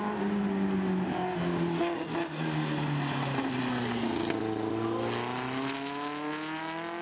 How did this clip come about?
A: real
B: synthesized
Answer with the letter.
A